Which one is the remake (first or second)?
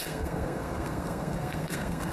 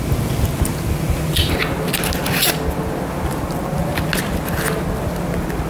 first